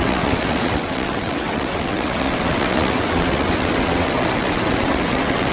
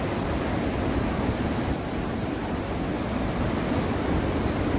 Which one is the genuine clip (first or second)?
second